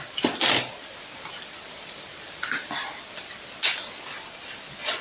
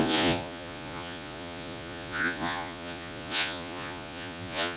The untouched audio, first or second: first